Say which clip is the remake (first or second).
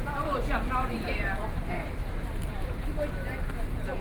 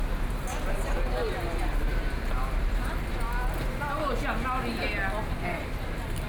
first